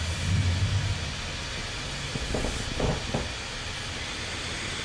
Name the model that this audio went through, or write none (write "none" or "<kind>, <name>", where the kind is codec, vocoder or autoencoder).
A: none